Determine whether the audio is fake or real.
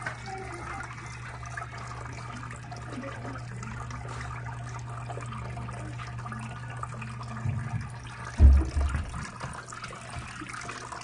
real